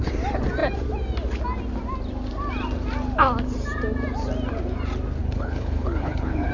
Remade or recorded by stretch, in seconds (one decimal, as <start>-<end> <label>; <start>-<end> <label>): 0.0-5.2 recorded; 5.2-6.5 remade